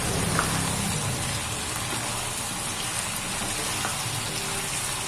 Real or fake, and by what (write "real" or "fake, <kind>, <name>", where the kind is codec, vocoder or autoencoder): real